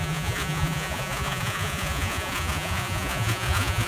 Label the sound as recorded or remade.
remade